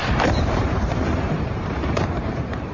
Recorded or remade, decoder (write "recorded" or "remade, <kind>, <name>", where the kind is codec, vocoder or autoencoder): remade, vocoder, BigVGAN v2